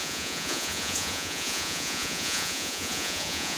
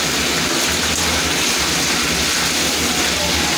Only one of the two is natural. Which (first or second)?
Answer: second